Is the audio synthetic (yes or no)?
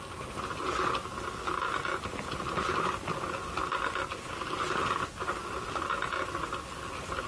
no